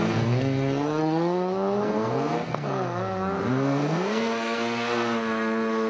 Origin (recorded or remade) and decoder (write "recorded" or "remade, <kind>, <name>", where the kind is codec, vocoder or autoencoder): remade, codec, SNAC